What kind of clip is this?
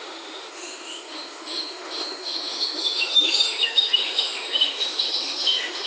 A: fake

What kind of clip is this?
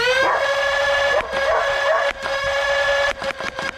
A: real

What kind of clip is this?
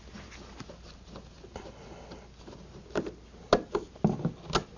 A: real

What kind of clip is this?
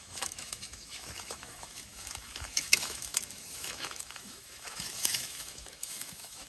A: fake